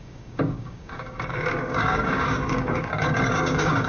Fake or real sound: fake